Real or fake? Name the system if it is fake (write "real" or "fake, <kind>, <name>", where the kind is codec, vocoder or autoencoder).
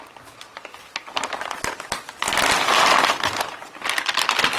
real